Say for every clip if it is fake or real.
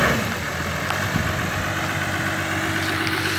real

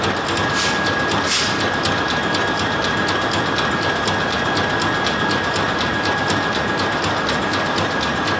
real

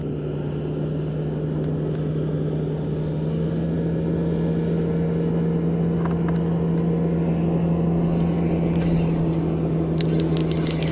real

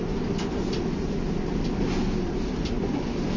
real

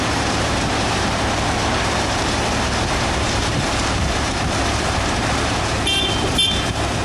fake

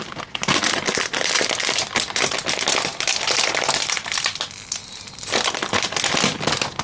real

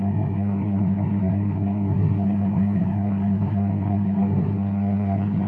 fake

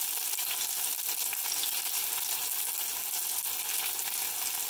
real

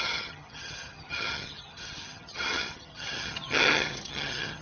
fake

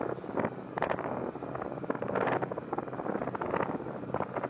real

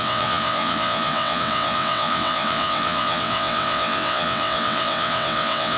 fake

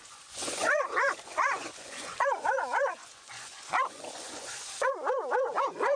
fake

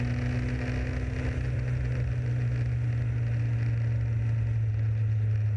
real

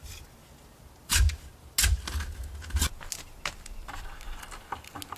real